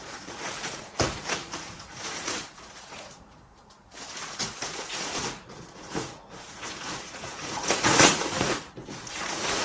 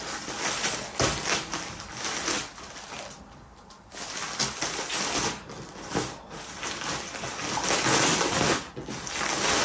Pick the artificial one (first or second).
first